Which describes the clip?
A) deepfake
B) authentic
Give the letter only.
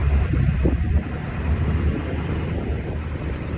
A